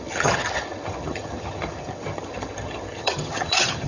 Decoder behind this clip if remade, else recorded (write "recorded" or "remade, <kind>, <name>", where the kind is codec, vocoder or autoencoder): remade, vocoder, HiFi-GAN